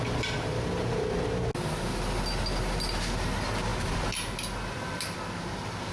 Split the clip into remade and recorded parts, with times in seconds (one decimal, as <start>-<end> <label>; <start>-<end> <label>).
0.0-5.9 recorded